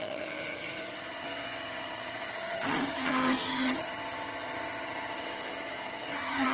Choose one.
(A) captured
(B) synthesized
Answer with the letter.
B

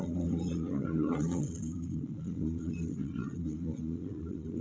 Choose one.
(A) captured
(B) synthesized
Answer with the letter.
B